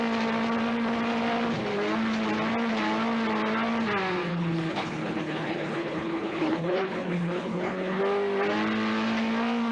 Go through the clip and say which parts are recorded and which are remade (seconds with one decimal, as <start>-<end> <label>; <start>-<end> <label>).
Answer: 0.0-4.3 recorded; 4.3-8.0 remade; 8.0-9.7 recorded